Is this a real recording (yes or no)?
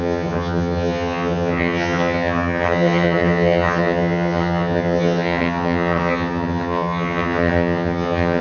no